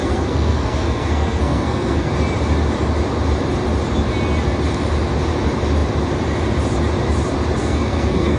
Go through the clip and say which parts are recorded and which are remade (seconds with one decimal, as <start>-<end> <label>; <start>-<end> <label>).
0.0-2.1 remade; 2.1-7.6 recorded; 7.6-8.4 remade

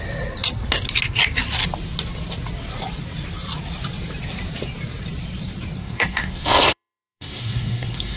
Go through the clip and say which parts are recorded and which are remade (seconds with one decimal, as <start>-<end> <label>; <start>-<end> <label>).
0.0-5.8 recorded; 5.8-8.2 remade